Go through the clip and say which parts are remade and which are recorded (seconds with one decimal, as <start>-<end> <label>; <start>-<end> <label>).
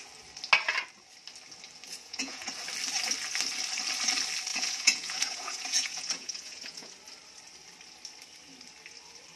0.0-1.9 recorded; 1.9-2.5 remade; 2.5-4.5 recorded; 4.5-6.9 remade; 6.9-9.4 recorded